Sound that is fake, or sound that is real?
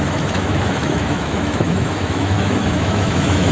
fake